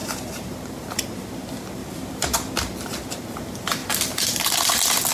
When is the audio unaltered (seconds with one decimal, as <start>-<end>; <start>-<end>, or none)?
0.0-1.8; 2.5-5.1

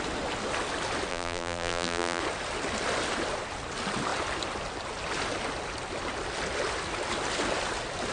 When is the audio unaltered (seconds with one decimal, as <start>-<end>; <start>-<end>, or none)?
0.0-1.1; 2.2-8.1

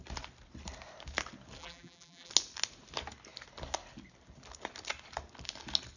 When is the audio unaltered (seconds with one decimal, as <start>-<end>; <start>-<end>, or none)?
0.0-1.6; 2.3-6.0

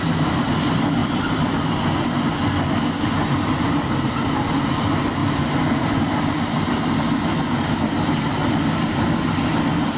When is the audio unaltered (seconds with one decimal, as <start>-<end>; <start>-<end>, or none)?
0.0-1.0; 1.5-5.2; 6.7-10.0

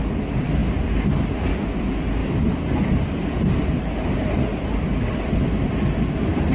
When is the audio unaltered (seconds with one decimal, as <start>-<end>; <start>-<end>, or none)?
0.0-6.5